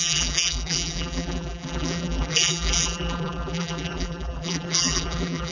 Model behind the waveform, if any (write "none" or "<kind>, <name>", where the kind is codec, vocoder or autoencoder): vocoder, BigVGAN v2